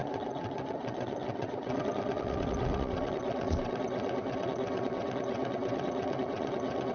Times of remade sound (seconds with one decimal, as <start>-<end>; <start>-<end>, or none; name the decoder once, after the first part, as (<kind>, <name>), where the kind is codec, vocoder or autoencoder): 0.0-6.9 (vocoder, WaveNeXt)